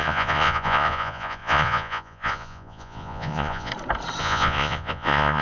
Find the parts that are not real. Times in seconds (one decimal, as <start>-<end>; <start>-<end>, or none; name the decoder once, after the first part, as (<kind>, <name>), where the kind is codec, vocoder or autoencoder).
0.0-3.7 (vocoder, Vocos); 4.2-5.4